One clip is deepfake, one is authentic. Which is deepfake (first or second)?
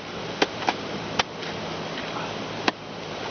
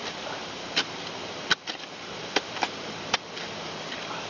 second